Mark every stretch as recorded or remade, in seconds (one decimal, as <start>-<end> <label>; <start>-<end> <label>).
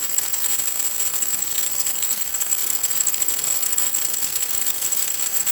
0.0-0.5 remade; 0.5-1.1 recorded; 1.1-5.5 remade